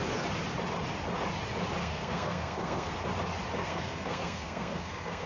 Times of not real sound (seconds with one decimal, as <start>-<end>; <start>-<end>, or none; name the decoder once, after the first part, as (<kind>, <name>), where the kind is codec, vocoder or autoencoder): 1.8-3.0 (codec, SNAC); 3.6-5.3